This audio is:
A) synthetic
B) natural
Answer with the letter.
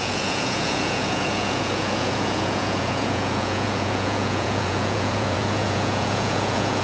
A